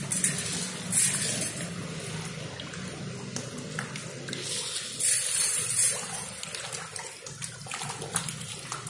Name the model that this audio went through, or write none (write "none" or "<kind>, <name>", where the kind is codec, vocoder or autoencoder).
none